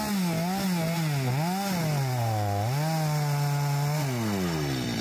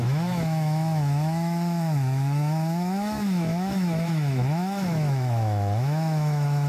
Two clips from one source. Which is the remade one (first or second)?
second